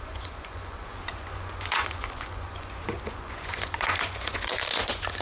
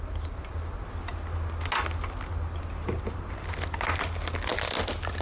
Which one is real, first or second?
second